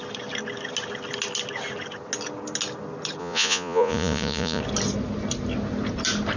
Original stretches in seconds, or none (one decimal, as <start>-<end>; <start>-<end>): 0.0-3.2; 4.6-6.4